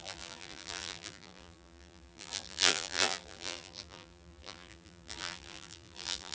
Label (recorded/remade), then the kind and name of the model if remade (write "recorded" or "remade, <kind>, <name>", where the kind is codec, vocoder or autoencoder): remade, vocoder, BigVGAN v2